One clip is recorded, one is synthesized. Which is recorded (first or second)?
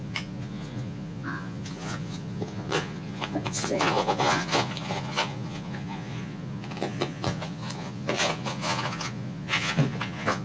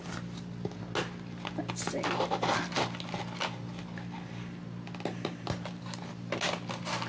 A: second